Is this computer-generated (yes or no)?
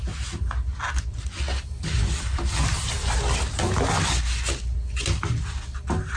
no